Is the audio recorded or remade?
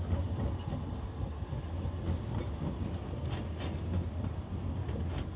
recorded